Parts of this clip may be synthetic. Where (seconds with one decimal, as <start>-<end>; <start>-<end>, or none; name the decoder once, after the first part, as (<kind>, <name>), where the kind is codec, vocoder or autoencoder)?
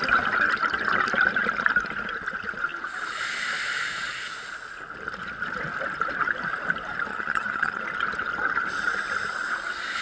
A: 7.1-7.8 (vocoder, HiFi-GAN)